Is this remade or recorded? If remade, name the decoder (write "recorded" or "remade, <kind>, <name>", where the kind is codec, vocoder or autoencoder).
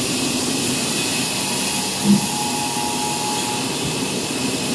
recorded